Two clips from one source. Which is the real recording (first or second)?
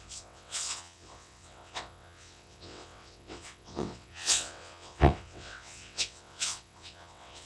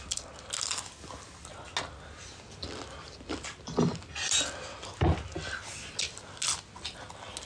second